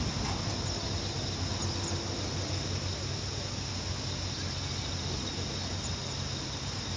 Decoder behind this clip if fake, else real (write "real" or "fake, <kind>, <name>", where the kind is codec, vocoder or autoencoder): real